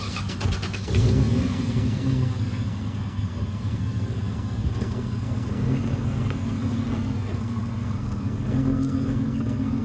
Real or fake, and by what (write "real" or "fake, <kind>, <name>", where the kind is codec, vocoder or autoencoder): fake, codec, SNAC